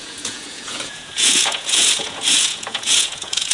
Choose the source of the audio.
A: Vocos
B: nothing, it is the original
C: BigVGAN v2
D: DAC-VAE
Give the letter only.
A